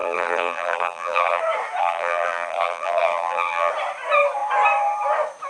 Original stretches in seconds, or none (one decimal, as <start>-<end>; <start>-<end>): 1.4-1.8; 3.7-5.5